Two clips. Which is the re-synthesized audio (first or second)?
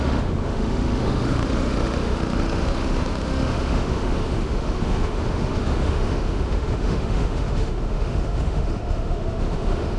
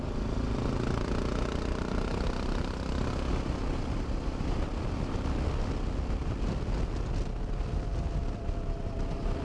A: first